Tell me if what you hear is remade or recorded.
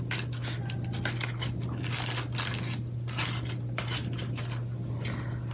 recorded